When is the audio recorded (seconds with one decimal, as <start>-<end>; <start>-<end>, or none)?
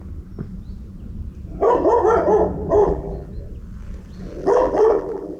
0.0-2.8; 3.3-4.4